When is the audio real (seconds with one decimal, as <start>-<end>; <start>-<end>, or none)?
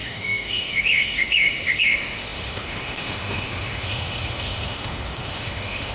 none